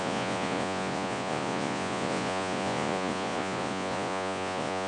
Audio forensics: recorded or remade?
remade